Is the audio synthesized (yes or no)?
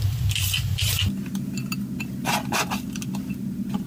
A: no